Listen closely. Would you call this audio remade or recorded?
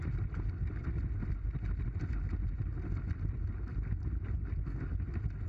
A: recorded